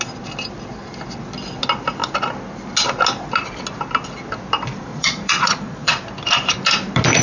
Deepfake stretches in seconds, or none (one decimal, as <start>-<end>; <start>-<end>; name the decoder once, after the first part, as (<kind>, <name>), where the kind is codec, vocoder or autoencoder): 4.9-5.9 (vocoder, Vocos)